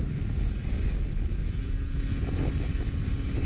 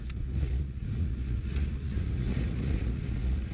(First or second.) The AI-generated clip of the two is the second